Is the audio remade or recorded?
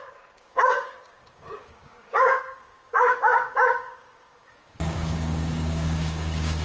remade